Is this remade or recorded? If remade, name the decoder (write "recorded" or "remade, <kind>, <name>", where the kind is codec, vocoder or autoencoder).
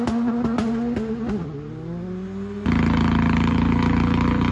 recorded